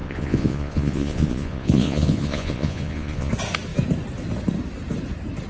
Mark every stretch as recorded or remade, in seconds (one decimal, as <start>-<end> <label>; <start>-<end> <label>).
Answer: 0.0-3.3 remade; 3.3-5.5 recorded